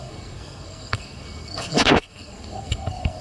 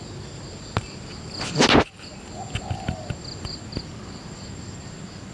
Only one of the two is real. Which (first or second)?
second